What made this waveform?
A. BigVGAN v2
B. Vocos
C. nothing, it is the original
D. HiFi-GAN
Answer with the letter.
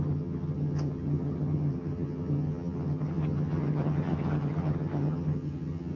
D